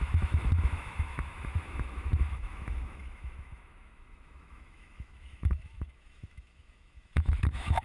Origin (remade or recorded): remade